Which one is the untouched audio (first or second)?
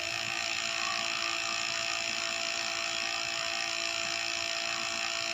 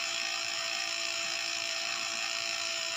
first